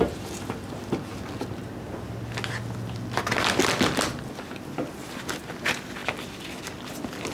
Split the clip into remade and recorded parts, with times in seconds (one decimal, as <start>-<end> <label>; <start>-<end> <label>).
0.0-7.3 recorded